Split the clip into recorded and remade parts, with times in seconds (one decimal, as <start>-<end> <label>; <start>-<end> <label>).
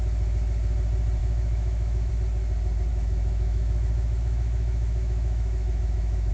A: 0.0-1.2 recorded; 1.2-2.1 remade; 2.1-2.9 recorded; 2.9-6.3 remade